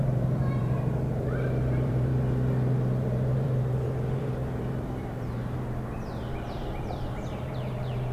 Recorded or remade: remade